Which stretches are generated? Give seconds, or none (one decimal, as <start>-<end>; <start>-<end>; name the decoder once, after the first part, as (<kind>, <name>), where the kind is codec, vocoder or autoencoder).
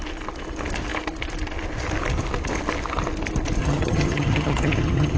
3.6-5.2 (vocoder, HiFi-GAN)